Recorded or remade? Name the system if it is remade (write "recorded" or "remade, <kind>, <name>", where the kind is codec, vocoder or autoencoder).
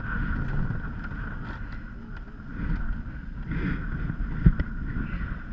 recorded